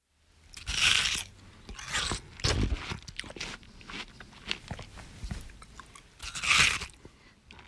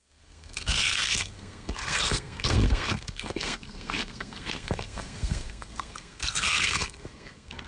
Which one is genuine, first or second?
first